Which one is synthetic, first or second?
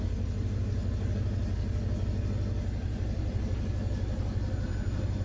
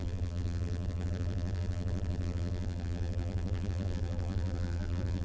second